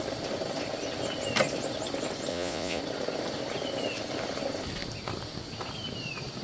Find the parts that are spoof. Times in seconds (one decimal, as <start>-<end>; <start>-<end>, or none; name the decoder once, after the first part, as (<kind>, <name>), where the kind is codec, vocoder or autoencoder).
2.3-2.8 (vocoder, Vocos)